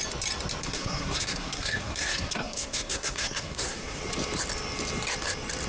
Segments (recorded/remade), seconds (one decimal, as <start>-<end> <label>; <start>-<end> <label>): 0.0-0.6 recorded; 0.6-4.0 remade; 4.0-5.7 recorded